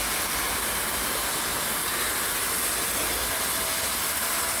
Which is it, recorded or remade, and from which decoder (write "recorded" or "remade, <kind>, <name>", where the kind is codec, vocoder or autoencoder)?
recorded